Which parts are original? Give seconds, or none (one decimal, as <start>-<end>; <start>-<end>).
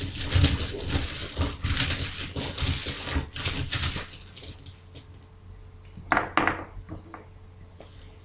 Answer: 0.0-8.2